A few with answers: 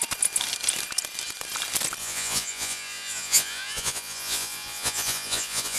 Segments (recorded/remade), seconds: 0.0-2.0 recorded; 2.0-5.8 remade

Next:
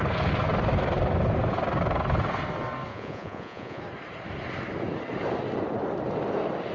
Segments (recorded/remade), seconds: 0.0-2.9 recorded; 2.9-3.8 remade; 3.8-6.7 recorded

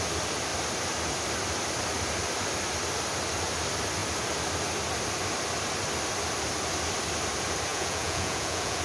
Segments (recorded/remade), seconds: 0.0-7.7 recorded; 7.7-8.8 remade

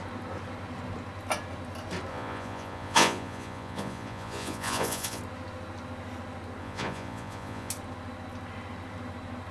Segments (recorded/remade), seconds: 0.0-2.1 recorded; 2.1-5.2 remade; 5.2-6.6 recorded; 6.6-7.7 remade; 7.7-9.5 recorded

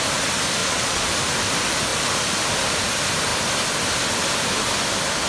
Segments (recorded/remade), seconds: 0.0-0.6 recorded; 0.6-1.1 remade; 1.1-5.3 recorded

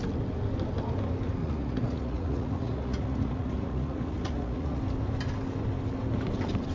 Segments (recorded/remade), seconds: 0.0-1.4 recorded; 1.4-4.8 remade; 4.8-6.7 recorded

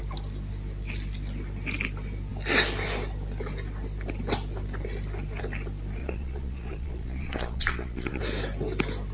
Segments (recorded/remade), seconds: 0.0-6.0 recorded; 6.0-8.2 remade; 8.2-9.1 recorded

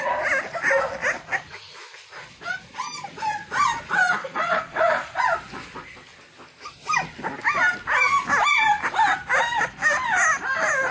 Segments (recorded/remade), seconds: 0.0-4.2 recorded; 4.2-5.2 remade; 5.2-10.9 recorded